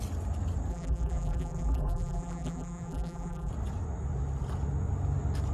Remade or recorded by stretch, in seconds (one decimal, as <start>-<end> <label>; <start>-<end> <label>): 0.0-0.7 recorded; 0.7-3.5 remade; 3.5-5.5 recorded